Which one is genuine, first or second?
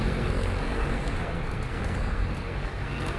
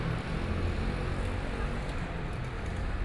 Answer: second